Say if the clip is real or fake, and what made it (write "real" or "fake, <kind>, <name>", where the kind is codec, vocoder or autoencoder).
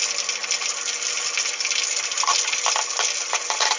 real